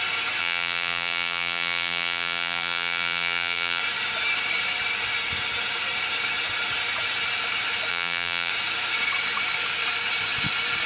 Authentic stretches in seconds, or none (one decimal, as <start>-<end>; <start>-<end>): 0.0-0.4; 3.8-7.9; 8.5-10.9